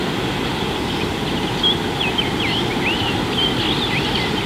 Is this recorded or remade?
recorded